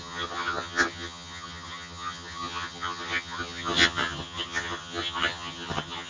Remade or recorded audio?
remade